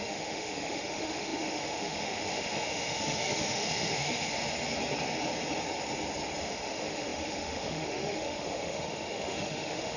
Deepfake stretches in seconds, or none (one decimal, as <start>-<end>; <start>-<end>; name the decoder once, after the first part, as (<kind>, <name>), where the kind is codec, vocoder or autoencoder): 0.0-4.4 (autoencoder, DAC-VAE); 6.4-10.0